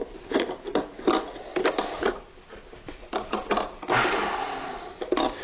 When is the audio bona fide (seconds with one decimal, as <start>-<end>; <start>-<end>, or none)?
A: 0.0-5.4